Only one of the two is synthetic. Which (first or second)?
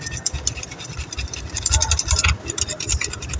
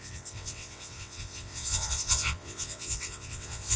second